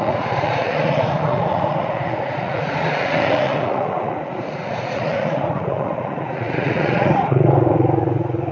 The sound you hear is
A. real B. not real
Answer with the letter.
B